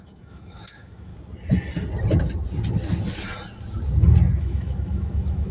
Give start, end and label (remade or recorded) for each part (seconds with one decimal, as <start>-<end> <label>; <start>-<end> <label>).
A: 0.0-1.1 remade; 1.1-4.4 recorded; 4.4-5.5 remade